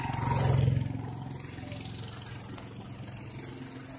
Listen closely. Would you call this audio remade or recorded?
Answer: recorded